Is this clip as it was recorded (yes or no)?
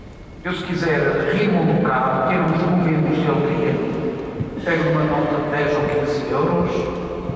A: yes